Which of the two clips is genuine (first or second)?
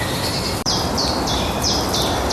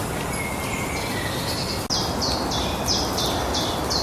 second